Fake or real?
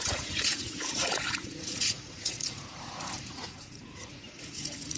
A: fake